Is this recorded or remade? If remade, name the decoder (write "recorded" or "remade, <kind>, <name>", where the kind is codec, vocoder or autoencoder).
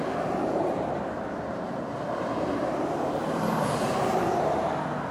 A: remade, vocoder, BigVGAN v2